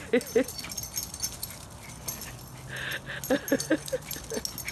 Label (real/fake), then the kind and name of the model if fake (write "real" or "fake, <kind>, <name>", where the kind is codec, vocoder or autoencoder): real